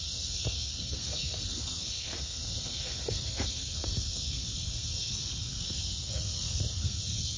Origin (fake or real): fake